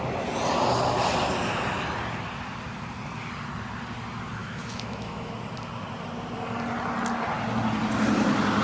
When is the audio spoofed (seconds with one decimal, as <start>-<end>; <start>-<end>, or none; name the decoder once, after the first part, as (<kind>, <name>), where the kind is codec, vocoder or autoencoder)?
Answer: 4.4-5.3 (autoencoder, DAC-VAE)